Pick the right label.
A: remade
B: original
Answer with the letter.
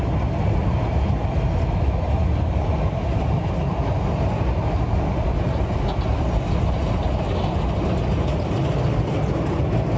B